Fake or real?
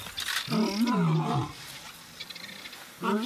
real